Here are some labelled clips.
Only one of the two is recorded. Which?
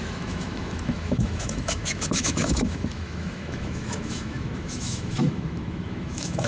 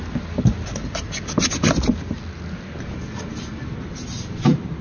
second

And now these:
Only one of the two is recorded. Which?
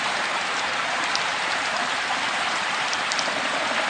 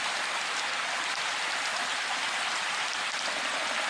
second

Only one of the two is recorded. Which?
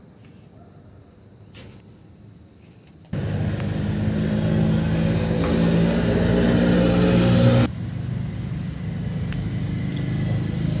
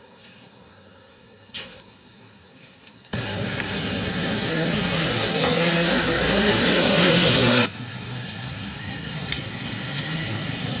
first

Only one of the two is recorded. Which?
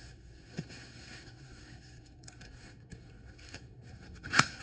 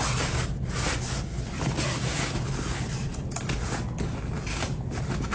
second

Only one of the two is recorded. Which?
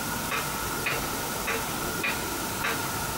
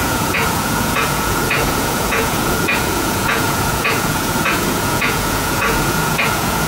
first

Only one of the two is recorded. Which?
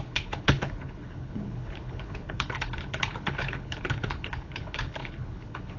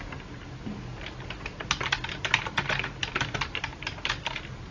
second